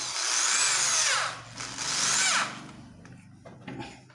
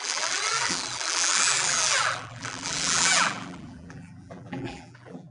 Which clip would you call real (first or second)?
first